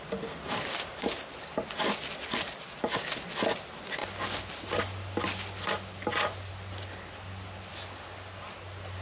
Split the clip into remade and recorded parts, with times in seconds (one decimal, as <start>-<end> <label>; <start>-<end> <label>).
0.0-9.0 recorded